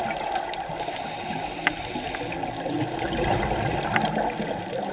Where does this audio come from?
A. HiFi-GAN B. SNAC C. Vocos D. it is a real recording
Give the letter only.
D